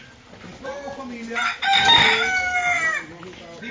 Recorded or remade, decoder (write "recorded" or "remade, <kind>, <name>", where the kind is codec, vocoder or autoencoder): recorded